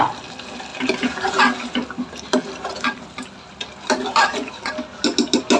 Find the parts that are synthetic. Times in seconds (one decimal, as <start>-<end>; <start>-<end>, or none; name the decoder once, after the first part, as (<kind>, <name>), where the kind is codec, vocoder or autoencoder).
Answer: none